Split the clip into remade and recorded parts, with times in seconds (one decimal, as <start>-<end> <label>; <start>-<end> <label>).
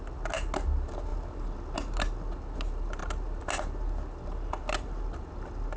0.0-5.8 recorded